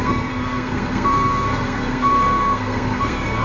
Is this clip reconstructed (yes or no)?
yes